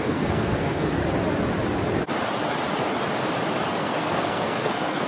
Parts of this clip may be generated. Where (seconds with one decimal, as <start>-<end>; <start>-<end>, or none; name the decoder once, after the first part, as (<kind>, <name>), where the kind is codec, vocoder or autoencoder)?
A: 0.0-1.0 (codec, SNAC); 3.8-5.1